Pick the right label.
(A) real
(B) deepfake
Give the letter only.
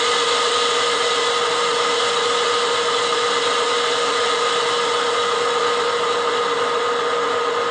A